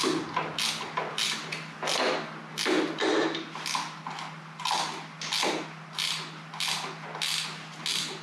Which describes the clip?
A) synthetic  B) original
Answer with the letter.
B